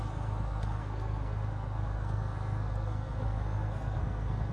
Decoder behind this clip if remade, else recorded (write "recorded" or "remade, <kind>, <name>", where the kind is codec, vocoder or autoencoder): remade, codec, SNAC